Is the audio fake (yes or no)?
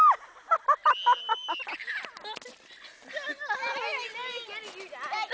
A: no